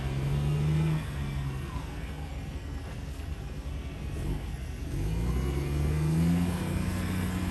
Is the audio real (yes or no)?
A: no